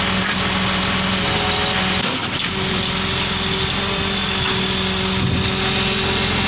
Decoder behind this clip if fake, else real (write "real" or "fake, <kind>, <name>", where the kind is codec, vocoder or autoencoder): real